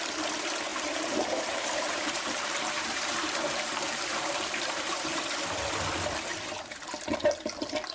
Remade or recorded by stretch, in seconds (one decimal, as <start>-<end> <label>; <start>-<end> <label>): 0.0-0.7 recorded; 0.7-5.2 remade; 5.2-7.9 recorded